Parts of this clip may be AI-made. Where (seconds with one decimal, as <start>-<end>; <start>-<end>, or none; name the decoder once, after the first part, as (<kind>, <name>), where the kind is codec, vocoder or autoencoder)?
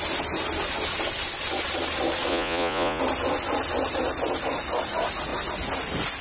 2.3-3.0 (vocoder, Vocos)